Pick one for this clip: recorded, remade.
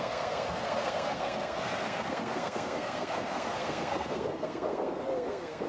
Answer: remade